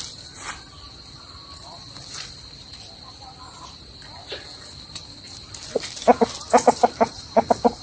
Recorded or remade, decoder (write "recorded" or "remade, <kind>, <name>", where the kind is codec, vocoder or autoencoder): recorded